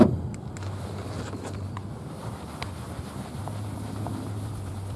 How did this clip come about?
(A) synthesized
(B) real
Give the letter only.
B